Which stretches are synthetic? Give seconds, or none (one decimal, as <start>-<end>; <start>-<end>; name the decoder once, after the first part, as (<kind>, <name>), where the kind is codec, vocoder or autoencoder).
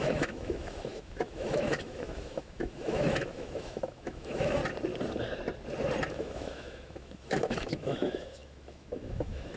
0.0-4.6 (autoencoder, DAC-VAE); 6.1-9.6